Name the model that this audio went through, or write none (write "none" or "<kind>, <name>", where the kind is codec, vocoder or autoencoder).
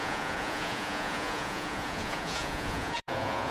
vocoder, Vocos